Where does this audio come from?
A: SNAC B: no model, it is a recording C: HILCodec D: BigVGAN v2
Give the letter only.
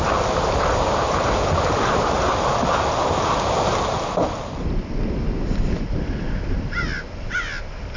B